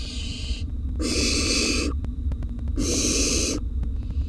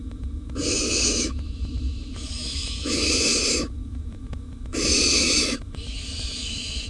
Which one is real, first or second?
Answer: first